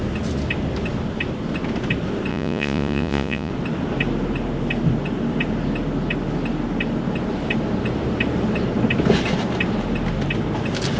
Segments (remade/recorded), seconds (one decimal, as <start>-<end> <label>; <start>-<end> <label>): 0.0-2.3 recorded; 2.3-3.5 remade; 3.5-11.0 recorded